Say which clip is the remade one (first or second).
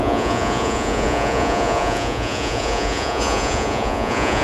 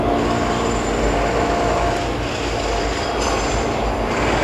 first